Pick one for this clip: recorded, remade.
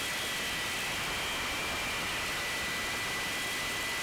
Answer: recorded